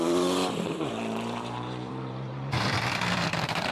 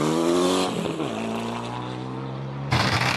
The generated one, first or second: first